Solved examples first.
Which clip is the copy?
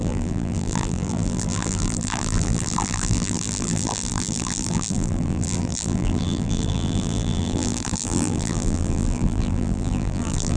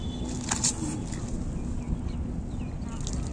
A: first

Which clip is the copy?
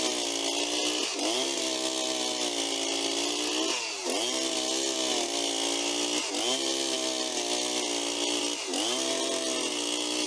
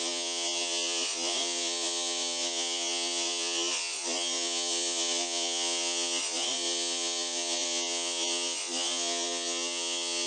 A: second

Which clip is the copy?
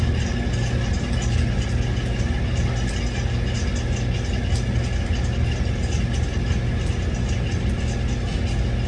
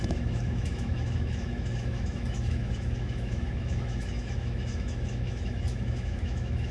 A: second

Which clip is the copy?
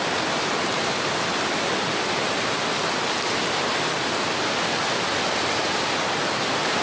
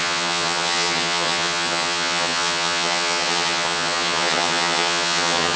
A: second